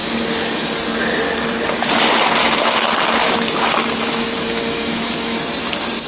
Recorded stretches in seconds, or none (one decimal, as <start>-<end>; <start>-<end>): 0.0-2.4; 5.4-6.1

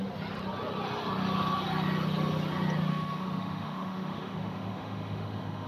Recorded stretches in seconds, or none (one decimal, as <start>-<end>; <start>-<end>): 0.0-2.9